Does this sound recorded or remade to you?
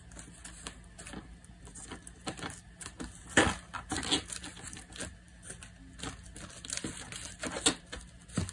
recorded